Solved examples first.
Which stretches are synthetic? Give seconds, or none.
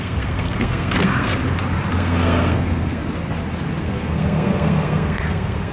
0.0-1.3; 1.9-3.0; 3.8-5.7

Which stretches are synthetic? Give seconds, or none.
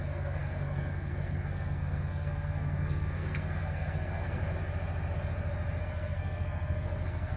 0.0-4.4; 5.8-7.4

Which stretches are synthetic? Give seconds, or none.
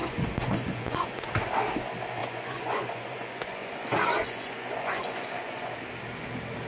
0.0-1.3; 2.2-5.7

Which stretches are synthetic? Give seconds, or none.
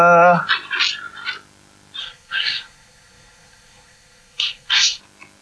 2.0-5.0